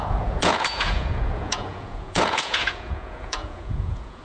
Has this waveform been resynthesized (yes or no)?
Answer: yes